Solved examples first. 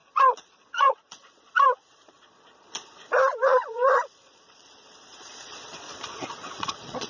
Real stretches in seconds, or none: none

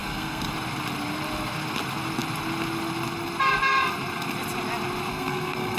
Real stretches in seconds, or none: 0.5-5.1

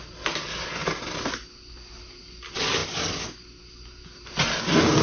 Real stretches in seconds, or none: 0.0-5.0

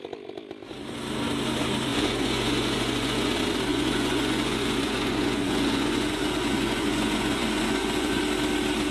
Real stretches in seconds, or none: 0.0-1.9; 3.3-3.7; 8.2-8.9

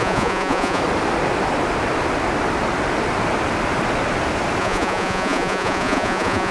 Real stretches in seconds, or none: 0.8-4.6

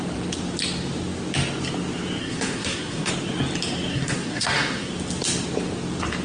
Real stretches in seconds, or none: 0.0-2.2; 3.1-3.9; 4.9-6.2